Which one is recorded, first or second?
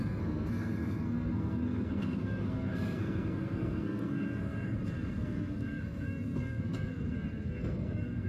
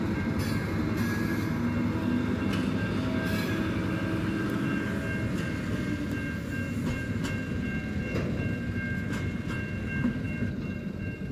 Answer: second